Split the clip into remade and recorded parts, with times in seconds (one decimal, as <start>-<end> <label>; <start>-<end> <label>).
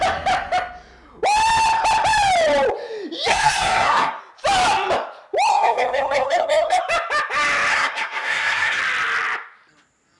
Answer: 0.0-3.3 recorded; 3.3-4.2 remade; 4.2-5.5 recorded; 5.5-6.8 remade; 6.8-7.7 recorded; 7.7-8.8 remade; 8.8-10.2 recorded